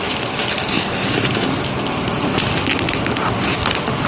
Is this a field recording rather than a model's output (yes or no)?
no